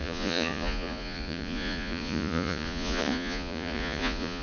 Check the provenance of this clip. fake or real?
fake